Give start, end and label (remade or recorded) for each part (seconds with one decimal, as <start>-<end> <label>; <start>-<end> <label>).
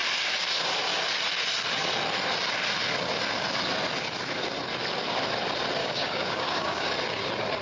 0.0-5.8 recorded; 5.8-6.9 remade; 6.9-7.6 recorded